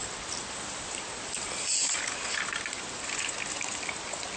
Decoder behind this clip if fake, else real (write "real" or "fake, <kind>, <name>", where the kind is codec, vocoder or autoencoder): real